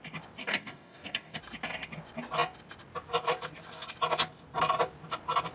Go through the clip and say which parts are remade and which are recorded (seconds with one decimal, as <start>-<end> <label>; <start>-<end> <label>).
0.0-0.4 recorded; 0.4-1.4 remade; 1.4-5.5 recorded